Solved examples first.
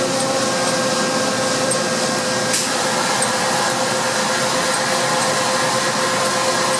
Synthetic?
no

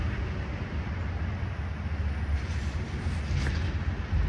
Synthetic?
no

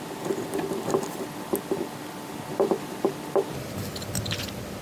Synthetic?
no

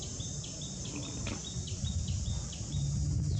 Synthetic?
no